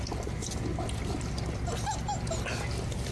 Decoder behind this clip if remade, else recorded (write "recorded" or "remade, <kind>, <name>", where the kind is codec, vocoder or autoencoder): recorded